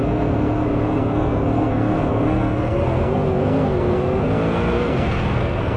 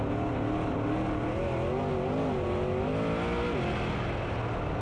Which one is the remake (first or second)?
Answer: first